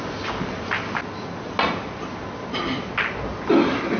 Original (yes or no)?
yes